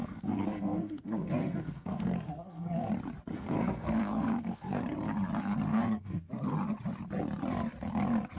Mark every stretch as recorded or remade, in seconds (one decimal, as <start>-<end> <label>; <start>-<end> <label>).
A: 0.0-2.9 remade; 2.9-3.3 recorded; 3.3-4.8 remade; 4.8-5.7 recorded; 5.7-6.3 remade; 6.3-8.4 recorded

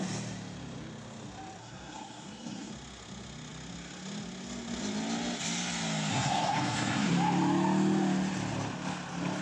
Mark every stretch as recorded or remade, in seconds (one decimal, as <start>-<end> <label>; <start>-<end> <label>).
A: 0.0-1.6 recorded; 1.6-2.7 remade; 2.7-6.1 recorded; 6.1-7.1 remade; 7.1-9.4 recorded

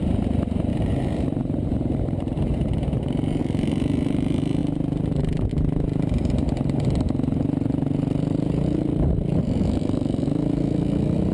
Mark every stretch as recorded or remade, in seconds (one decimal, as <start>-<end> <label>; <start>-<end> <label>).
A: 0.0-0.7 recorded; 0.7-3.4 remade; 3.4-4.6 recorded; 4.6-5.5 remade; 5.5-11.3 recorded

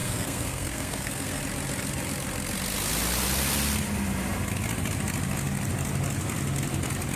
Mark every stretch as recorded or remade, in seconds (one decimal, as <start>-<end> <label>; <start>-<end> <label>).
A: 0.0-1.4 remade; 1.4-7.2 recorded

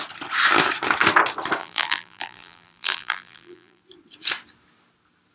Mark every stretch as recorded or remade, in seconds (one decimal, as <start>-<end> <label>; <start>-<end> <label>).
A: 0.0-1.6 recorded; 1.6-3.8 remade; 3.8-5.3 recorded

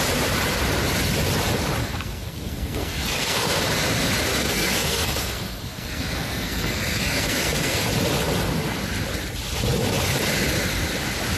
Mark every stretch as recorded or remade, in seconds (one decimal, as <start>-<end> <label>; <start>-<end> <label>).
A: 0.0-1.8 recorded; 1.8-3.6 remade; 3.6-4.3 recorded; 4.3-7.9 remade; 7.9-11.4 recorded

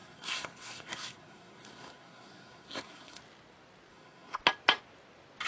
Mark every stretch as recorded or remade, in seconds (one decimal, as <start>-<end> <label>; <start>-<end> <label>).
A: 0.0-3.2 remade; 3.2-3.9 recorded; 3.9-4.4 remade; 4.4-5.5 recorded